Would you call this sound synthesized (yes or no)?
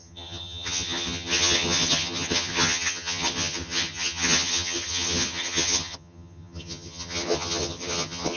yes